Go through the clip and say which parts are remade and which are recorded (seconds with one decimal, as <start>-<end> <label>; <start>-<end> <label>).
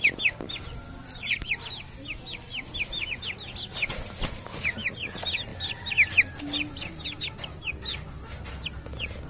0.0-9.3 recorded